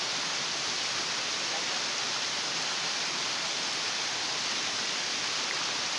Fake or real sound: real